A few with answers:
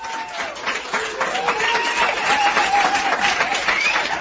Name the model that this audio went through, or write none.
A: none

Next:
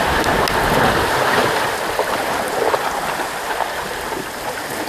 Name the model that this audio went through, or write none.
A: none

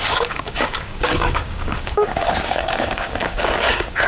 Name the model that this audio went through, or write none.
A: codec, DAC